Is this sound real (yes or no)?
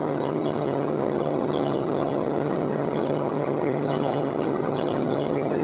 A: no